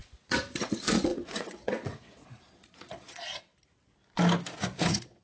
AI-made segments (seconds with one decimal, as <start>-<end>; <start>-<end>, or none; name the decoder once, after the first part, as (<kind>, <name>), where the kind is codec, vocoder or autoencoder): 0.6-3.5 (vocoder, Vocos); 4.8-5.2